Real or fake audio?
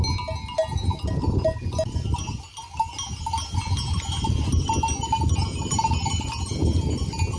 real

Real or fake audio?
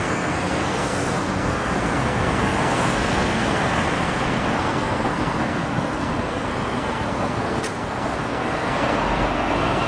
fake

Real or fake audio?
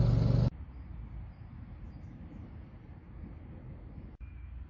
real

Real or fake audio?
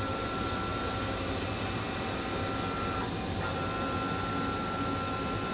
real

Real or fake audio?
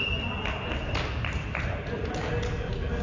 real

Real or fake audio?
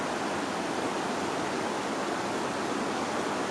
real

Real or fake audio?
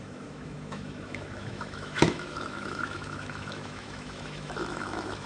fake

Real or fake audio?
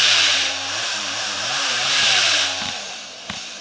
fake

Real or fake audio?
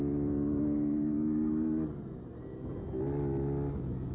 real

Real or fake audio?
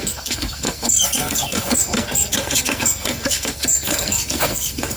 fake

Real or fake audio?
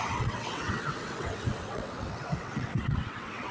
fake